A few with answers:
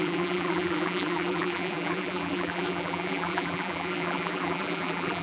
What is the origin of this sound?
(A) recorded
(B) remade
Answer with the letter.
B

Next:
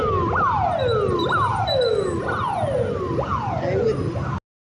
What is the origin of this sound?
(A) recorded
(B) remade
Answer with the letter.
A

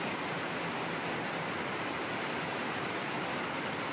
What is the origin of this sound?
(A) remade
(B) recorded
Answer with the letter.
A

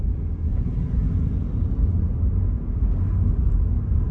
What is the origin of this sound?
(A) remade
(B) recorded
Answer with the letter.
B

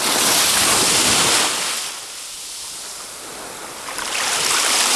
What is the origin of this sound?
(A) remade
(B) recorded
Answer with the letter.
B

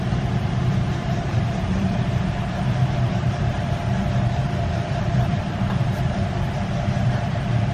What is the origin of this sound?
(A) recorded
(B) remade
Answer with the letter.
B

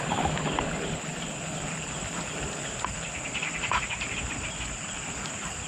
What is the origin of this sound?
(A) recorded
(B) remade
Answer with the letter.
B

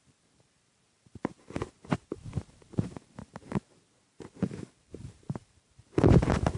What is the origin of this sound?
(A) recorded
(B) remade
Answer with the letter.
B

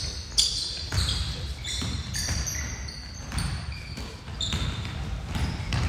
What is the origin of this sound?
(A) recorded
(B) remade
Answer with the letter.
B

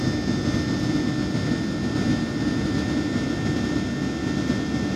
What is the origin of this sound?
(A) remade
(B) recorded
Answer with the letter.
B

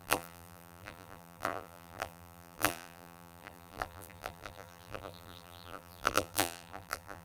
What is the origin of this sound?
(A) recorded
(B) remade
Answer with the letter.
B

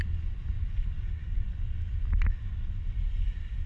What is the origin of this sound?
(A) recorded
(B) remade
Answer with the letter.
A